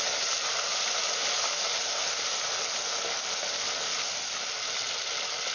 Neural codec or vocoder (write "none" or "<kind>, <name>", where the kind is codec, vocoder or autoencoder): none